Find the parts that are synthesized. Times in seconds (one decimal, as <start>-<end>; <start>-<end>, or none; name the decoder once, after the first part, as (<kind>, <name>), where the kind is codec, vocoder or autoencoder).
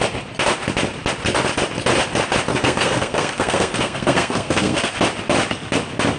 2.5-4.9 (codec, SNAC)